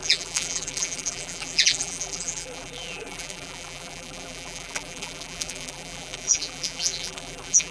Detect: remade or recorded remade